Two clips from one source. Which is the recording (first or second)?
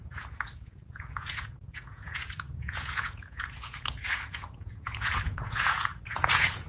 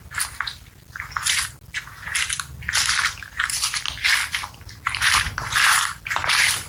second